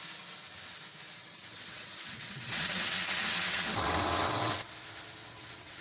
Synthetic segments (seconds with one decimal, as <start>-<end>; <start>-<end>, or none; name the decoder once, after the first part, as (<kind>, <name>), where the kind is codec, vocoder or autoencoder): 1.2-4.7 (vocoder, WaveNeXt); 5.2-5.8